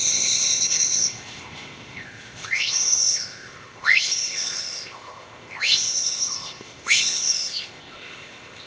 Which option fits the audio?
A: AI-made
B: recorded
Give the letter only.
A